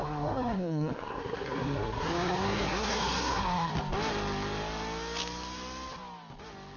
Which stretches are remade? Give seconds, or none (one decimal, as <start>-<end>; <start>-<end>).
0.0-3.7